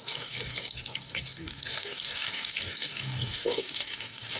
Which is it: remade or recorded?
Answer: remade